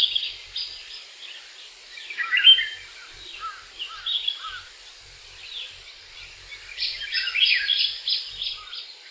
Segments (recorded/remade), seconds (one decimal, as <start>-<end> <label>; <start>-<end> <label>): 0.0-9.1 recorded